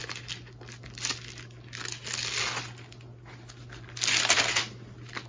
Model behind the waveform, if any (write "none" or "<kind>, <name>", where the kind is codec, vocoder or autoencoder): none